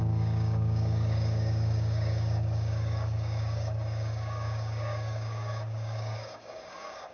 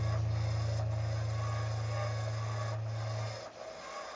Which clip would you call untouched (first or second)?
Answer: second